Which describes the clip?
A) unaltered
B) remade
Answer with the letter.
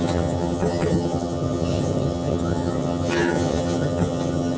B